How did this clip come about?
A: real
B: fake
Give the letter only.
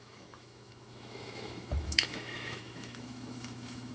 B